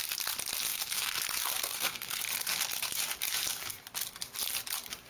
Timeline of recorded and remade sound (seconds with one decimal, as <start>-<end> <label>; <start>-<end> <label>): 0.0-0.7 recorded; 0.7-1.2 remade; 1.2-1.6 recorded; 1.6-2.2 remade; 2.2-5.1 recorded